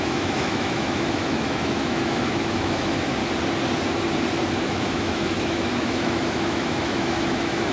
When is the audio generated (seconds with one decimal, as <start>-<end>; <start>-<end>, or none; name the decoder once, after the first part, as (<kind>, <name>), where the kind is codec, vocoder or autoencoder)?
0.0-3.2 (autoencoder, DAC-VAE); 4.6-7.7